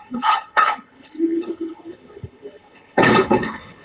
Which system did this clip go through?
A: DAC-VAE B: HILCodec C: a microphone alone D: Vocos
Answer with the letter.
B